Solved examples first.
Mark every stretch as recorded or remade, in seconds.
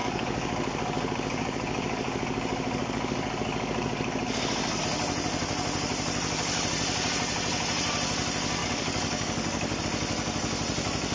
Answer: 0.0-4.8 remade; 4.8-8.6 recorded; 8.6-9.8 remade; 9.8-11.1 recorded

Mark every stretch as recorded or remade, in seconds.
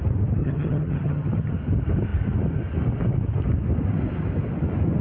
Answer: 0.0-0.4 recorded; 0.4-1.3 remade; 1.3-5.0 recorded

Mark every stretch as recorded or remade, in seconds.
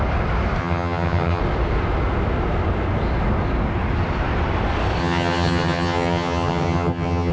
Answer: 0.0-0.6 recorded; 0.6-1.4 remade; 1.4-5.0 recorded; 5.0-7.3 remade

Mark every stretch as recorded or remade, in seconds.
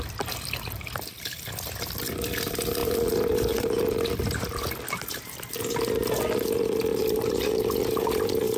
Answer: 0.0-6.9 recorded; 6.9-7.7 remade; 7.7-8.6 recorded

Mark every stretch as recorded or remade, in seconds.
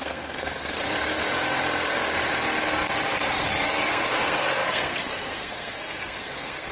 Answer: 0.0-0.8 remade; 0.8-3.9 recorded; 3.9-6.7 remade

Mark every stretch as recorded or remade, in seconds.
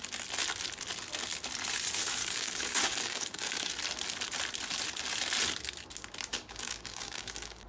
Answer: 0.0-2.2 recorded; 2.2-3.7 remade; 3.7-6.3 recorded; 6.3-7.7 remade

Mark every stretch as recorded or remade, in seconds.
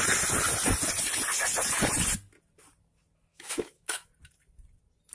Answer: 0.0-3.3 recorded; 3.3-4.1 remade; 4.1-5.1 recorded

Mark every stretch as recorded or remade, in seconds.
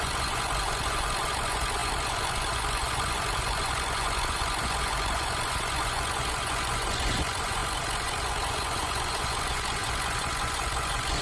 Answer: 0.0-11.2 remade